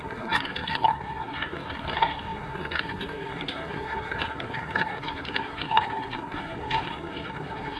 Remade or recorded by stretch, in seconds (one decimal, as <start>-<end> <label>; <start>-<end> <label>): 0.0-7.8 remade